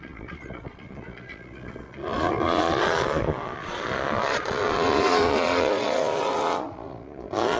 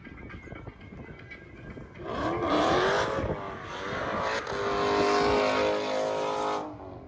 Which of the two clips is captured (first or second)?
second